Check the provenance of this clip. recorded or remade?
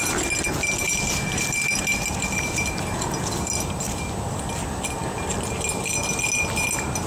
recorded